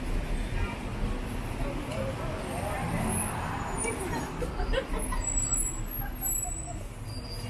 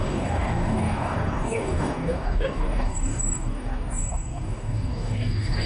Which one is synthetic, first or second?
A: second